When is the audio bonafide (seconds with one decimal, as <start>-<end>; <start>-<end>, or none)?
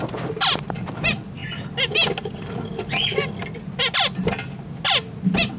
0.0-5.6